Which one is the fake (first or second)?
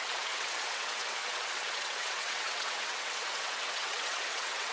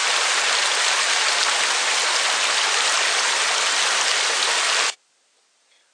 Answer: first